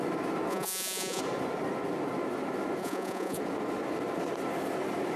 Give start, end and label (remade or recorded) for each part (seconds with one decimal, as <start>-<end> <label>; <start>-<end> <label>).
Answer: 0.0-0.5 recorded; 0.5-1.2 remade; 1.2-2.8 recorded; 2.8-3.4 remade; 3.4-5.2 recorded